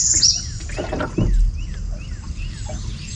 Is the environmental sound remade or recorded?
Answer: recorded